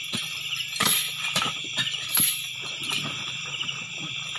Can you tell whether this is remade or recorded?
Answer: remade